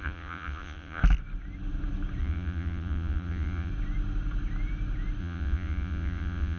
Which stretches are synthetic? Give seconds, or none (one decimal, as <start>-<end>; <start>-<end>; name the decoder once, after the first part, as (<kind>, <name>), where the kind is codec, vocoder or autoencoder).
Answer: 0.0-1.0 (vocoder, Vocos); 2.2-3.7; 5.2-6.6